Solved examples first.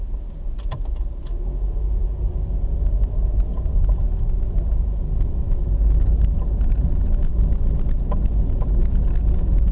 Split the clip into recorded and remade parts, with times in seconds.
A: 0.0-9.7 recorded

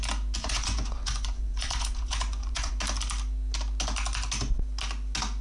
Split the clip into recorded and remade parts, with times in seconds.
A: 0.0-0.4 recorded; 0.4-2.7 remade; 2.7-5.4 recorded

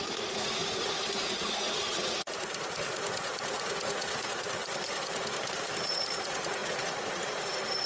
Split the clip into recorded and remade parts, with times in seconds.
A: 0.0-0.6 remade; 0.6-1.3 recorded; 1.3-4.6 remade; 4.6-5.9 recorded; 5.9-7.9 remade

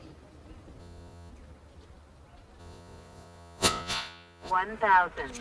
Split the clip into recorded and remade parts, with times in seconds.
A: 0.0-0.8 recorded; 0.8-1.3 remade; 1.3-2.6 recorded; 2.6-4.5 remade; 4.5-5.4 recorded

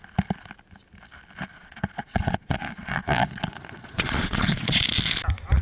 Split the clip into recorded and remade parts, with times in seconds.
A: 0.0-1.5 recorded; 1.5-4.8 remade; 4.8-5.6 recorded

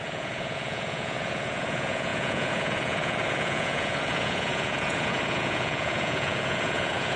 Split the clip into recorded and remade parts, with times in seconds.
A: 0.0-7.2 remade

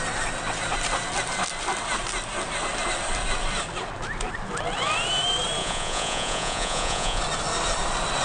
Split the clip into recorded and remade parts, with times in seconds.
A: 0.0-5.6 recorded; 5.6-7.2 remade; 7.2-8.2 recorded

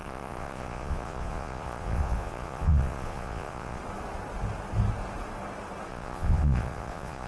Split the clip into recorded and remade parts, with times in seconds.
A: 0.0-3.8 remade; 3.8-5.9 recorded; 5.9-7.3 remade